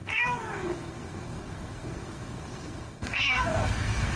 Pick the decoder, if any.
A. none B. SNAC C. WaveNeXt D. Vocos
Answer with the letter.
B